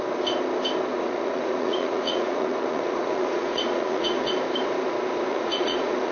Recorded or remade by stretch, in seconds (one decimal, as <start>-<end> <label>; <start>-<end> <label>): 0.0-0.9 recorded; 0.9-4.3 remade; 4.3-5.3 recorded; 5.3-6.1 remade